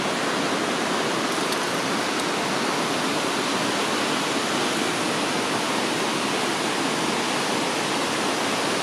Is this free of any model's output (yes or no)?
yes